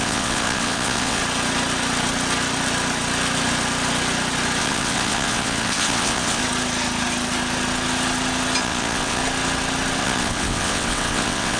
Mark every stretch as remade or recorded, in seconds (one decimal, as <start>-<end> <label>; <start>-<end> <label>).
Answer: 0.0-1.2 remade; 1.2-4.6 recorded; 4.6-6.4 remade; 6.4-8.6 recorded; 8.6-9.2 remade; 9.2-10.0 recorded; 10.0-11.6 remade